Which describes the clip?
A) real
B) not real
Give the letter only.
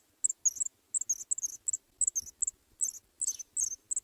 A